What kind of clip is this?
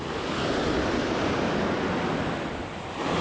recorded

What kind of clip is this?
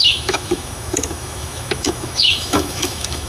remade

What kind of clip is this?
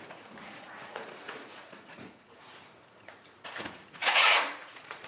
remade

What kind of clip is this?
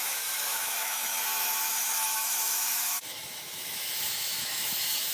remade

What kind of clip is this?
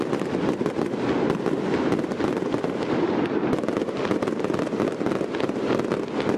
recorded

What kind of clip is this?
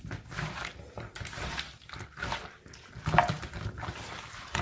recorded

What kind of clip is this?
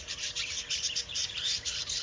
remade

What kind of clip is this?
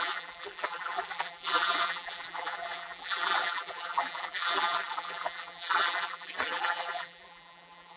remade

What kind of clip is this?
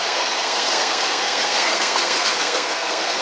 remade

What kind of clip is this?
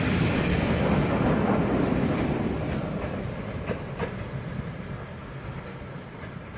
recorded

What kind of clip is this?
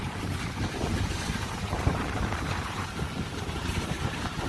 remade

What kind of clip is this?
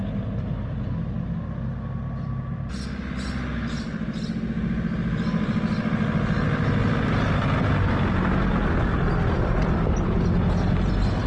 recorded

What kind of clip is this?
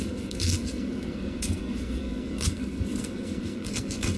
remade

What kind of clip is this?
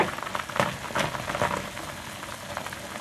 recorded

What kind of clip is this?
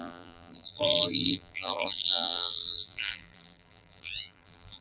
remade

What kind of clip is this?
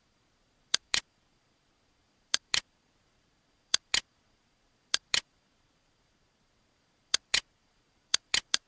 remade